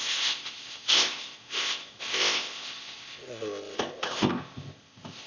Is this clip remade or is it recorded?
remade